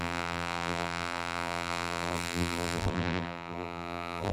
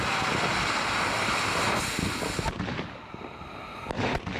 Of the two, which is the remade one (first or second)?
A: first